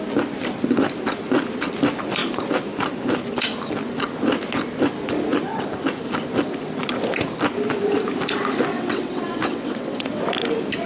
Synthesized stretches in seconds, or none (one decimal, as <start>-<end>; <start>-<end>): 8.7-10.2